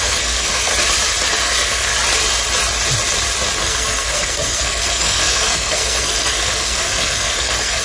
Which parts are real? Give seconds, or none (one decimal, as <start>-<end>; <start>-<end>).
0.7-1.4; 1.9-3.6